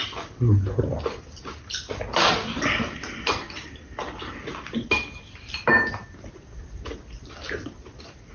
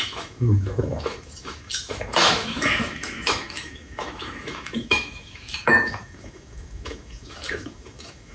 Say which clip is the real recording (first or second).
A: first